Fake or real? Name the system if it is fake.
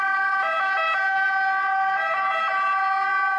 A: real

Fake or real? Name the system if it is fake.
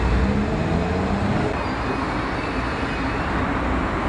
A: real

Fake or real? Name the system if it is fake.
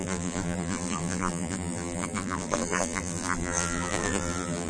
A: fake, vocoder, BigVGAN v2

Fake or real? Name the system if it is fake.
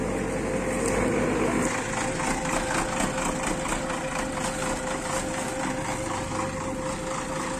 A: real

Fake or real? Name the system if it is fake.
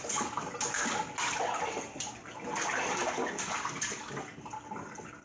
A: real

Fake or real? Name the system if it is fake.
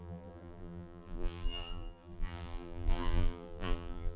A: fake, vocoder, BigVGAN v2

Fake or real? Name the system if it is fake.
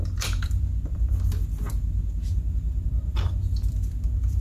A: fake, vocoder, BigVGAN v2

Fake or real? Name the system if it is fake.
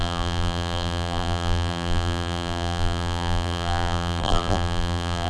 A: fake, vocoder, BigVGAN v2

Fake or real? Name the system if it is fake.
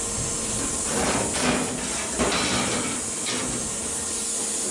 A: real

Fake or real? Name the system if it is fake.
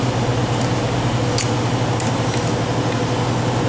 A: real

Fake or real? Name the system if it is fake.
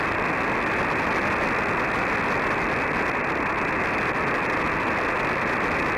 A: real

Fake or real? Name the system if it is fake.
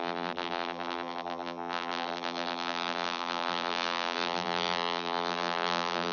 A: fake, vocoder, BigVGAN v2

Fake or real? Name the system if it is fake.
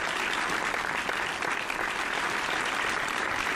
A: real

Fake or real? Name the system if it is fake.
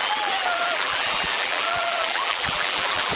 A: fake, vocoder, BigVGAN v2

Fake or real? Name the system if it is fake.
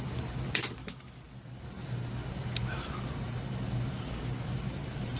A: real